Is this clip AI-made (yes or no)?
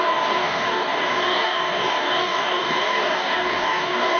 yes